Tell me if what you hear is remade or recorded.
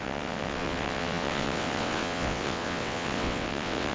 remade